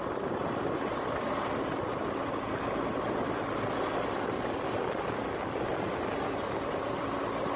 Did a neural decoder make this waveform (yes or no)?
no